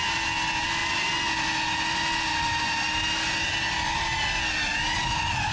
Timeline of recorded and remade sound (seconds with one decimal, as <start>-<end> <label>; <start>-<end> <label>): 0.0-4.7 recorded; 4.7-5.5 remade